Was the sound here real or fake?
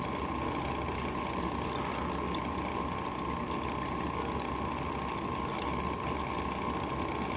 real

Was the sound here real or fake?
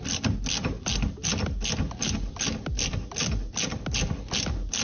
real